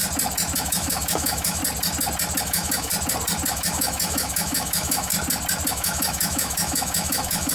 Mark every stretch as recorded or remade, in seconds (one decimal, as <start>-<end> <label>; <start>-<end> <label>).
0.0-0.6 recorded; 0.6-1.6 remade; 1.6-2.4 recorded; 2.4-2.9 remade; 2.9-3.5 recorded; 3.5-5.1 remade; 5.1-5.7 recorded; 5.7-7.5 remade